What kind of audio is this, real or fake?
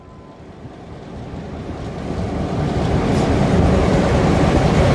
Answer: real